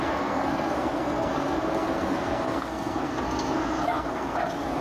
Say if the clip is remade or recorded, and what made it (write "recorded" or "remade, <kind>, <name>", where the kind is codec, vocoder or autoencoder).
remade, codec, SNAC